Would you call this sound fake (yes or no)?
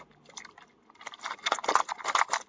no